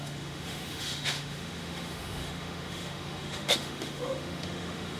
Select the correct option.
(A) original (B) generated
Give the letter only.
B